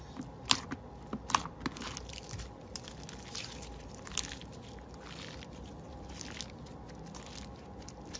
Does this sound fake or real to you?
real